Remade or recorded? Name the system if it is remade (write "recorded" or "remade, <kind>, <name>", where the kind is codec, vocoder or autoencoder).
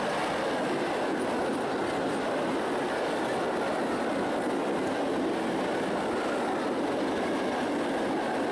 recorded